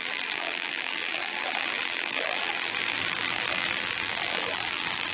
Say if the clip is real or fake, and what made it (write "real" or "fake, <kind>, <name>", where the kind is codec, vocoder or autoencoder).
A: fake, vocoder, BigVGAN v2